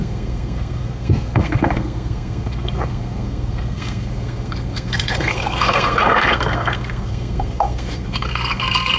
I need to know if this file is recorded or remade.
remade